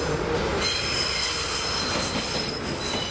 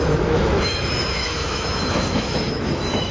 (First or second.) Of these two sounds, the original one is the first